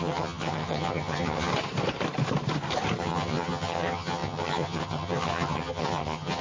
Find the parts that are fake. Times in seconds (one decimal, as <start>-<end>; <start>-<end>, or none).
0.0-1.5; 3.0-6.4